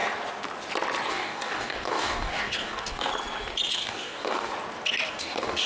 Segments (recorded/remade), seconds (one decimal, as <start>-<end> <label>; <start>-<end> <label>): 0.0-1.1 recorded; 1.1-3.1 remade; 3.1-3.7 recorded; 3.7-4.5 remade; 4.5-5.1 recorded; 5.1-5.7 remade